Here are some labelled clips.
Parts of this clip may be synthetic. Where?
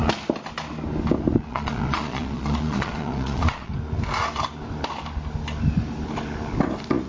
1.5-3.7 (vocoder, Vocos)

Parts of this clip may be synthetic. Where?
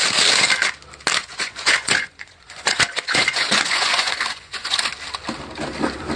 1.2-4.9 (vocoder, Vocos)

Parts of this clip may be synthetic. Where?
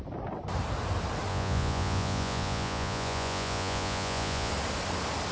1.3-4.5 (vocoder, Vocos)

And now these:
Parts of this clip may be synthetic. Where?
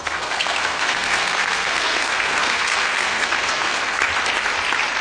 0.0-4.0 (codec, SNAC)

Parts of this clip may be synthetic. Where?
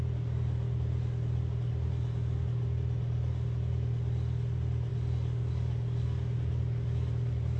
none